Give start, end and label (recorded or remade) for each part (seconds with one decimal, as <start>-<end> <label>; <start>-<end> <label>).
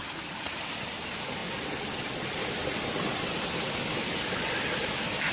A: 0.0-5.3 recorded